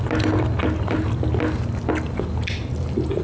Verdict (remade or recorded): recorded